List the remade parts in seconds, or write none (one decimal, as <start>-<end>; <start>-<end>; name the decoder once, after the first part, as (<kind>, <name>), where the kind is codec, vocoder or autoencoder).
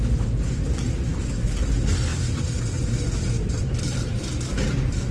none